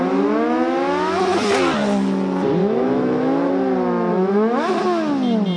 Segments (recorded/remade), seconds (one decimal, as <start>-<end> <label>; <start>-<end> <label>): 0.0-2.6 recorded; 2.6-3.5 remade; 3.5-4.1 recorded; 4.1-4.8 remade; 4.8-5.6 recorded